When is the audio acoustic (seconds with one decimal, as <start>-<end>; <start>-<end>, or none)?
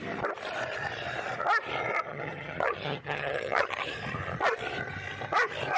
0.0-2.1; 3.8-5.8